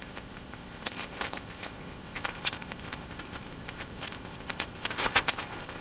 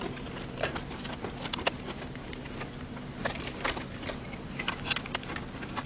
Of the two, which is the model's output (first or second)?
first